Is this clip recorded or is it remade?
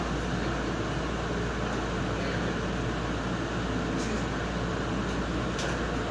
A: recorded